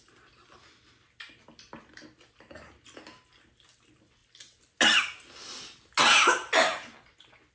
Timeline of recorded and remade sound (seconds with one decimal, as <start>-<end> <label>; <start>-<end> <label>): 0.0-7.5 recorded